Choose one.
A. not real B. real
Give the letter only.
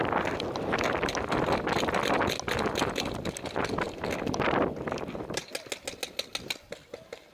B